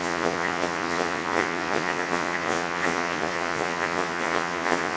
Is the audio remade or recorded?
remade